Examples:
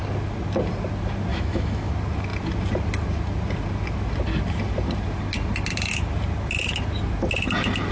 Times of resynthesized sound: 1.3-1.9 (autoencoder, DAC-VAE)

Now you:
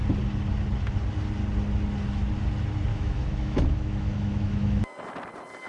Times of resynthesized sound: 2.9-4.8 (autoencoder, DAC-VAE)

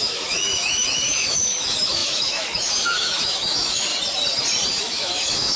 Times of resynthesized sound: 0.0-3.9 (autoencoder, DAC-VAE); 4.8-5.6

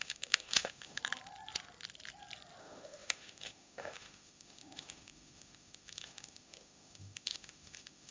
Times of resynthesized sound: 0.0-1.0 (autoencoder, DAC-VAE); 2.6-8.1

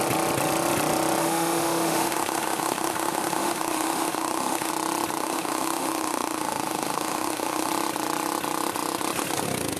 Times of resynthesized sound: 1.2-4.7 (autoencoder, DAC-VAE); 5.2-7.7